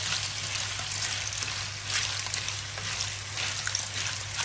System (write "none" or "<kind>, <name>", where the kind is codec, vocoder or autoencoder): none